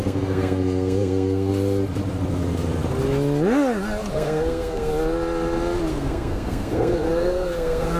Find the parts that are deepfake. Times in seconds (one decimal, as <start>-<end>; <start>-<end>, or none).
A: 0.0-1.5; 4.1-4.9; 5.9-8.0